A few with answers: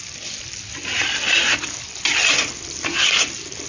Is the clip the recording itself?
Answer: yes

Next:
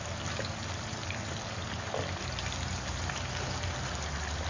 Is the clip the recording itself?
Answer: yes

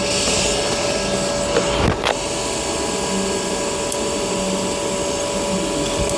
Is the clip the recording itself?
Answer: yes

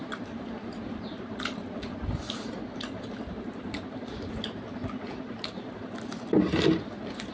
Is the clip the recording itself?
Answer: no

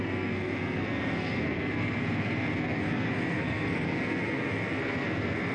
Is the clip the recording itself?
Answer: no